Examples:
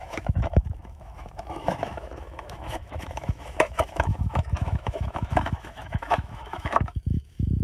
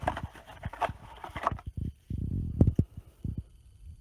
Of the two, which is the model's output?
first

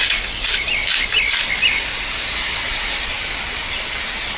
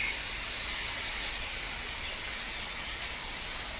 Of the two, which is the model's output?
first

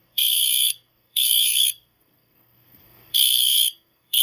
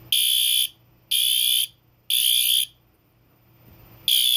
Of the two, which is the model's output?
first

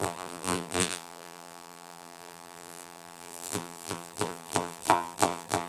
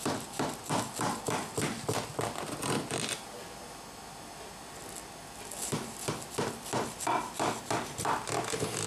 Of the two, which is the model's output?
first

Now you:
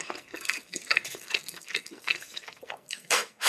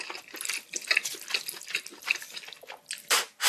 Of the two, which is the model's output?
first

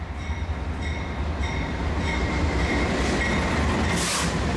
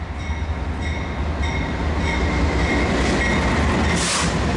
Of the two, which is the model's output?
first